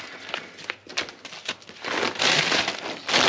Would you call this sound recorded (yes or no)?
yes